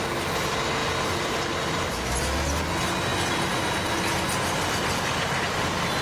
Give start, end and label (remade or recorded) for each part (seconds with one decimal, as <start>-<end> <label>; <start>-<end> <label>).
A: 0.0-6.0 recorded